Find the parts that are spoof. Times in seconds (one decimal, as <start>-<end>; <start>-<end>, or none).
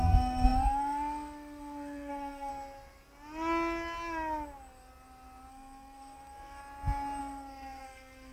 0.0-2.5; 5.5-6.6; 7.2-8.3